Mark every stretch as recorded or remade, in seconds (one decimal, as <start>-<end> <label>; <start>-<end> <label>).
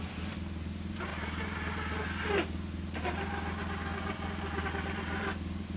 0.0-5.8 recorded